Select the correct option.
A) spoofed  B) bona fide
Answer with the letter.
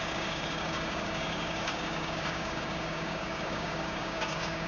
A